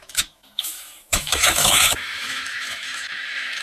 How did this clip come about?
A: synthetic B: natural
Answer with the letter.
A